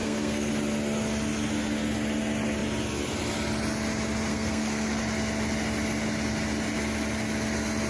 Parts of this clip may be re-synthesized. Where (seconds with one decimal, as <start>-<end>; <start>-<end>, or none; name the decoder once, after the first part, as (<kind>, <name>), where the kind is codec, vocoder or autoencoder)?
0.0-0.5 (codec, SNAC); 4.3-5.0